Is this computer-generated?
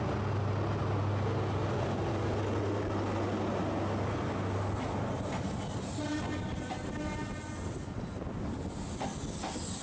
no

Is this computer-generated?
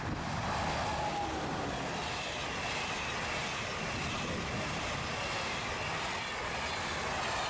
no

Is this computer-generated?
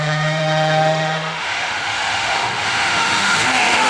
yes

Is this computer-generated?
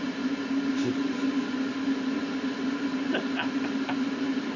no